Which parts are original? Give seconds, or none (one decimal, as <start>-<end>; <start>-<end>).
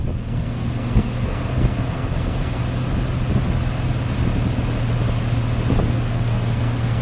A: 2.6-5.9